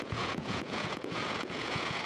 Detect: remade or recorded remade